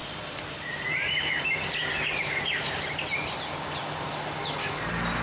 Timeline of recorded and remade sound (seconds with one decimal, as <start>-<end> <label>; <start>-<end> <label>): 0.0-3.1 remade; 3.1-5.2 recorded